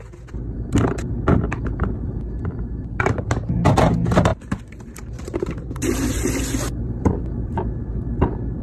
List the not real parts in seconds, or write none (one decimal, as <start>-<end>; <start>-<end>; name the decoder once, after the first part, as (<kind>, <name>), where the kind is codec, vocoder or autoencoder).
1.6-3.0 (vocoder, BigVGAN v2); 4.3-7.2